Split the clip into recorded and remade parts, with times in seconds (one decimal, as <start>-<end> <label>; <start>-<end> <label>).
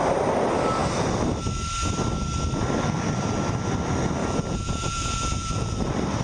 0.0-4.2 recorded; 4.2-5.8 remade; 5.8-6.2 recorded